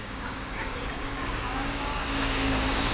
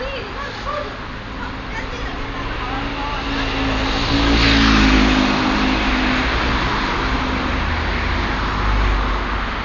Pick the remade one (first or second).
first